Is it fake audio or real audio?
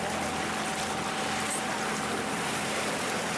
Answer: real